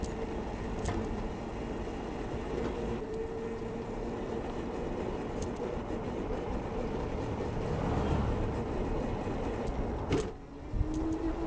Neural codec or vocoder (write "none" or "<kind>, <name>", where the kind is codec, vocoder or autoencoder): none